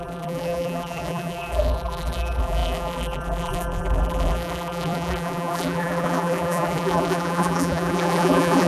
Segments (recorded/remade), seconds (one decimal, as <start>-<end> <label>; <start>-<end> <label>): 0.0-8.7 remade